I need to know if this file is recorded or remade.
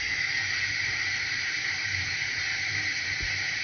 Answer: remade